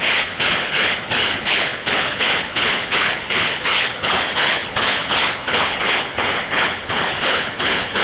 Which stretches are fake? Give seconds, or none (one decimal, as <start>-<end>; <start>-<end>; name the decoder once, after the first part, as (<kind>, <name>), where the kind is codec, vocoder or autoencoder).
0.0-8.0 (codec, HILCodec)